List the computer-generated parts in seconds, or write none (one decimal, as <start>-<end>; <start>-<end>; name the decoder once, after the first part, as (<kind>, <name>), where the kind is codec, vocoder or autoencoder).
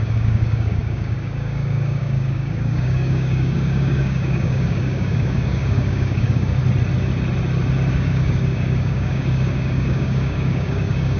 0.0-6.6 (codec, DAC); 7.9-11.2